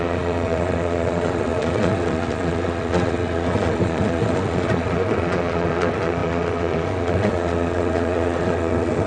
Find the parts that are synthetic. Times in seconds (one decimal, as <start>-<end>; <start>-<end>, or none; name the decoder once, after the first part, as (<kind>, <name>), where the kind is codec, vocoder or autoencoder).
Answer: 0.0-9.1 (vocoder, Vocos)